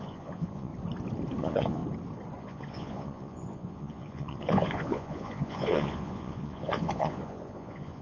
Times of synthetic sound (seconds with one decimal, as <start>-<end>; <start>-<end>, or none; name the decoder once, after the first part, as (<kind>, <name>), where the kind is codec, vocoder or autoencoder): 0.0-0.7 (vocoder, Vocos); 1.4-1.8; 2.4-8.0